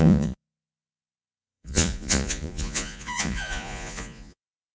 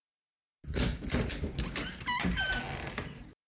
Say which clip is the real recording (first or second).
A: second